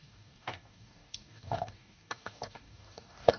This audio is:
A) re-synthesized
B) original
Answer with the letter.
A